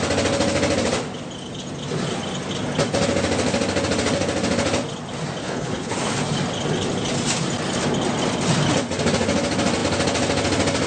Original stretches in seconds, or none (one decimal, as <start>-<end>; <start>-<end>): 0.0-5.4; 5.9-10.9